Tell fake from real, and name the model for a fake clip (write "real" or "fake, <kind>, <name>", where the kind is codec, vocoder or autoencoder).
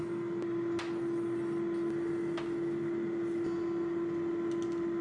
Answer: real